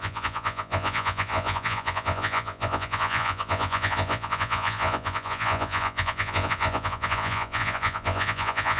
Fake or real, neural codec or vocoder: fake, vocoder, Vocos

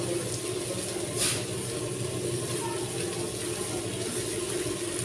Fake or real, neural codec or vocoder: real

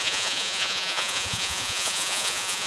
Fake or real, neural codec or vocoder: fake, vocoder, Vocos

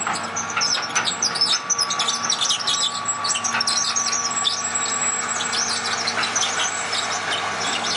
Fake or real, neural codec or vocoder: real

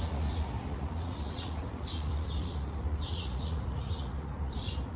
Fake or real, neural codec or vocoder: fake, vocoder, Vocos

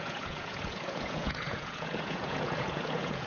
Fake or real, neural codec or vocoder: fake, vocoder, Vocos